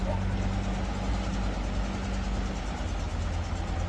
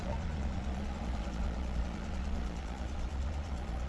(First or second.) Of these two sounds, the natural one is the first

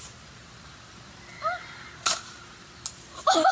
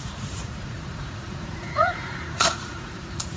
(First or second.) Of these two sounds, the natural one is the first